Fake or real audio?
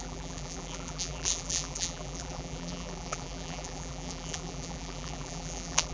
fake